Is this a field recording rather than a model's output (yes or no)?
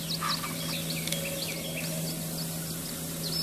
yes